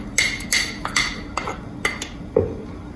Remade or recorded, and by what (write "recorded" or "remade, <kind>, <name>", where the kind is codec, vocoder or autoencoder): recorded